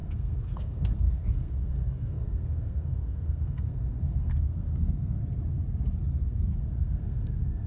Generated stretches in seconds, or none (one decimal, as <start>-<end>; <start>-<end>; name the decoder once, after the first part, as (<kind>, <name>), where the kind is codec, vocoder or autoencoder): 0.0-5.2 (codec, SNAC); 6.1-7.7